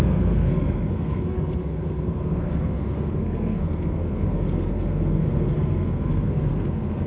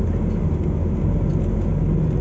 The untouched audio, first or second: second